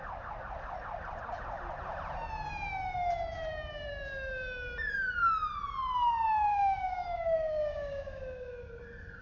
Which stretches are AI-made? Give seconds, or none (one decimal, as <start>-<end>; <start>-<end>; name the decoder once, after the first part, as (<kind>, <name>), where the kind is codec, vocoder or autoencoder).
6.5-8.7 (codec, DAC)

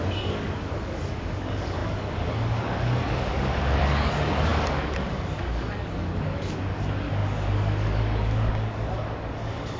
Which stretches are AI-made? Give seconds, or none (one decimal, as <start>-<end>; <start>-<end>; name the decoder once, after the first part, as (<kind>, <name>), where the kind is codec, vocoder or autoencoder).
0.0-9.8 (codec, DAC)

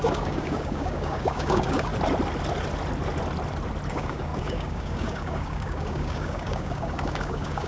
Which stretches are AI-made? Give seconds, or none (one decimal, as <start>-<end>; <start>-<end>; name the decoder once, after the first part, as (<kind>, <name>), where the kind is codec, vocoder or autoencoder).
0.0-1.9 (codec, DAC); 3.9-7.7

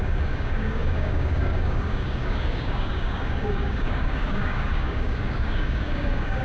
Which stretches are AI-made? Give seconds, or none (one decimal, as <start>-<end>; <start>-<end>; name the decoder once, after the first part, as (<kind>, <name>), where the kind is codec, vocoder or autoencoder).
0.0-6.4 (codec, DAC)

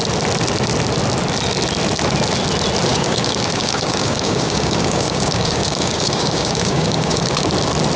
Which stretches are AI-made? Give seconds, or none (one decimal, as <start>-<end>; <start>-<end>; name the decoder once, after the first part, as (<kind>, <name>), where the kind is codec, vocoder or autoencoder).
2.9-7.5 (codec, DAC)

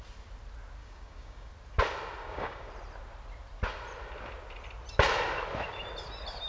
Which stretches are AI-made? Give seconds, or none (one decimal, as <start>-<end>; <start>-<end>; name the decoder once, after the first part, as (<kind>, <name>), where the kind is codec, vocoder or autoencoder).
0.8-1.5 (codec, DAC); 2.2-2.7